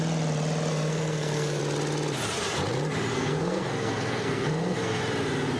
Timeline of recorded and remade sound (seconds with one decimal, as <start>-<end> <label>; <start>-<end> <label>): 0.0-0.7 recorded; 0.7-1.6 remade; 1.6-3.1 recorded; 3.1-5.0 remade; 5.0-5.6 recorded